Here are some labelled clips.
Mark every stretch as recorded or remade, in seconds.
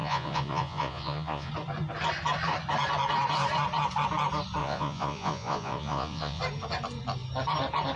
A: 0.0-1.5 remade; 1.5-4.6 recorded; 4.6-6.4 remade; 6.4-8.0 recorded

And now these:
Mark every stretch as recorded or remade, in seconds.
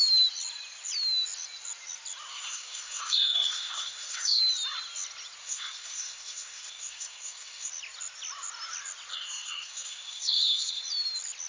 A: 0.0-2.3 recorded; 2.3-4.4 remade; 4.4-5.4 recorded; 5.4-7.7 remade; 7.7-9.1 recorded; 9.1-10.8 remade; 10.8-11.5 recorded